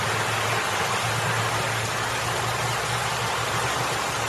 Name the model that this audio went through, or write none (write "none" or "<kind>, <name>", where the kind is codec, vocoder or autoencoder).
none